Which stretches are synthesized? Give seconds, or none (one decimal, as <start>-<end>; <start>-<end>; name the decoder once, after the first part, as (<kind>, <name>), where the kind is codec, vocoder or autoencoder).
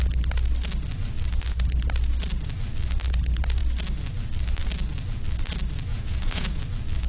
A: 5.9-6.6 (vocoder, Vocos)